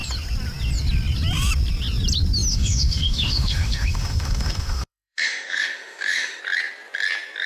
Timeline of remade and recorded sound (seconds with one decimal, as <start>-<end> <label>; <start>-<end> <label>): 0.0-2.5 recorded; 2.5-6.4 remade; 6.4-7.5 recorded